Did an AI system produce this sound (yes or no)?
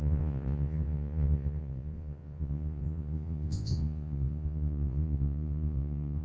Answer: yes